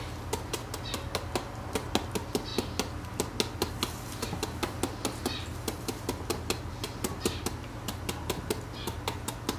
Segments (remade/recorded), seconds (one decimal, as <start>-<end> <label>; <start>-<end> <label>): 0.0-9.6 recorded